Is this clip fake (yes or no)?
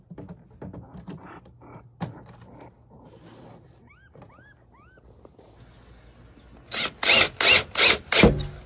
no